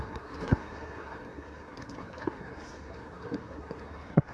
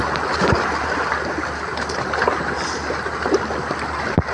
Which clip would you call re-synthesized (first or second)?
first